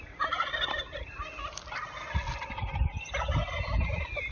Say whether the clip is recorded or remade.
recorded